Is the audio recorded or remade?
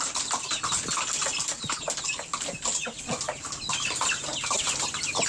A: recorded